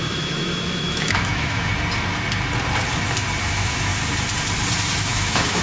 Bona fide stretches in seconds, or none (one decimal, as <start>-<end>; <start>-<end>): 1.7-3.4; 3.9-5.0